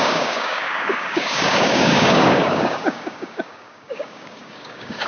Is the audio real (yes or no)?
no